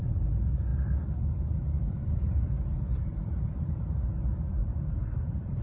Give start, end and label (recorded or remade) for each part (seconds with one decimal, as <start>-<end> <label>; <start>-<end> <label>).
0.0-0.7 recorded; 0.7-4.1 remade; 4.1-4.6 recorded; 4.6-5.6 remade